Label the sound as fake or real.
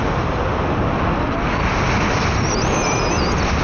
real